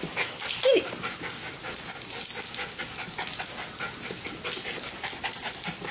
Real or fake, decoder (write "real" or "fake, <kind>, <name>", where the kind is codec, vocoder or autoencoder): real